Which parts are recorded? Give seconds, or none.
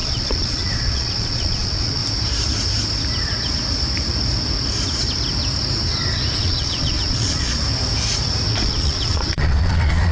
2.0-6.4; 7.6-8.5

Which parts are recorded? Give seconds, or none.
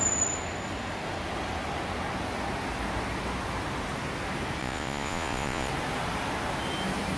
0.0-4.6; 5.7-7.2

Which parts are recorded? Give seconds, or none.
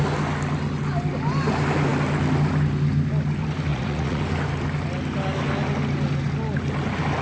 0.0-3.7; 4.2-7.2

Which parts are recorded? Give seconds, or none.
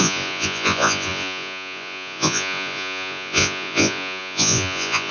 none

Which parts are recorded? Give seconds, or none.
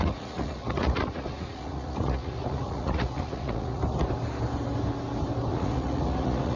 3.8-5.5